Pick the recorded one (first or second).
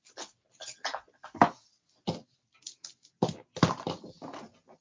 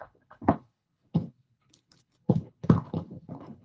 first